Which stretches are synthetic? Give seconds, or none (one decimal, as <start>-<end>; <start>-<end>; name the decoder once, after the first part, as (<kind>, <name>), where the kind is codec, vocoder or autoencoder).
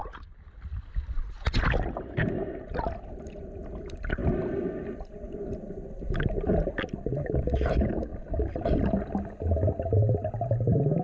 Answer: none